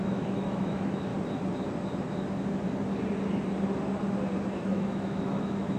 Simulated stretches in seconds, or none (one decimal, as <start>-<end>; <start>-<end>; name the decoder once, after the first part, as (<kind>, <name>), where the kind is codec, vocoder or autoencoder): 0.0-1.1 (autoencoder, DAC-VAE); 4.6-5.8